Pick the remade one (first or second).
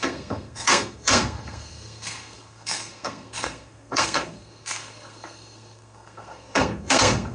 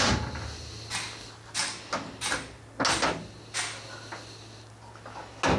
first